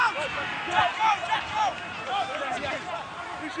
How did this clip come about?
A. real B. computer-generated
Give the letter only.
A